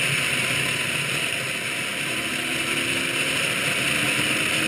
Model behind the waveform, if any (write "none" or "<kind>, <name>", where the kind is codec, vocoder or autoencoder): none